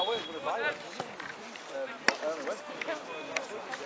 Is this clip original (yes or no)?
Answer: yes